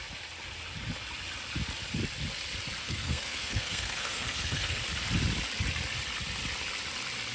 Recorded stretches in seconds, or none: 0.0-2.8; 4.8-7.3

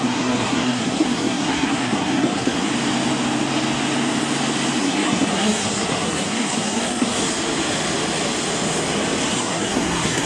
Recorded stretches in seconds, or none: 2.7-4.8; 7.2-9.3

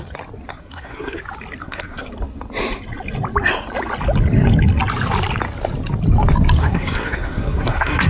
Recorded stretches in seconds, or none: 0.0-0.5; 1.2-1.6; 2.1-6.6

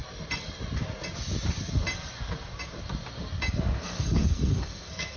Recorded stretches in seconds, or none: 0.0-3.8